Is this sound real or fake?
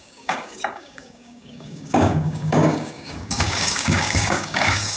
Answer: fake